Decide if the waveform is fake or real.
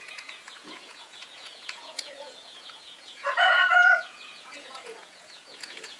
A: fake